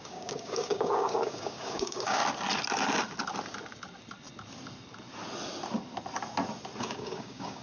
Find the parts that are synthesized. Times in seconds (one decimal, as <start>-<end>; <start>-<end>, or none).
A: 0.0-2.2; 6.8-7.6